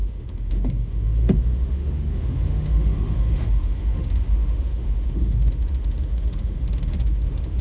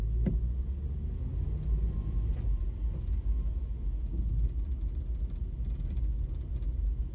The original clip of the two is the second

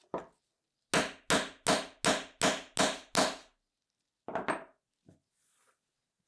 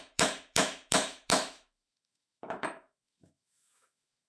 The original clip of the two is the first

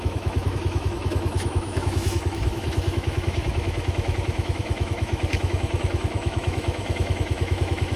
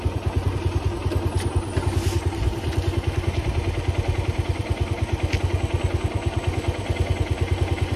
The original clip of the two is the second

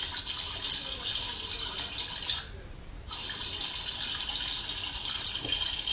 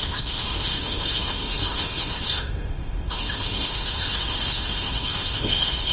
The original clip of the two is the first